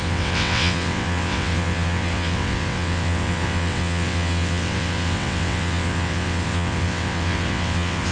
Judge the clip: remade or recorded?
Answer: remade